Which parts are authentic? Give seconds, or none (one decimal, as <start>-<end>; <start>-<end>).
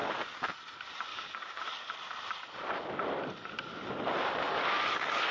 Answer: 0.0-1.1; 1.6-5.3